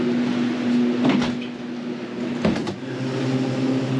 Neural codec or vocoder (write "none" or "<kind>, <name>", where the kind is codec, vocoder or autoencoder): none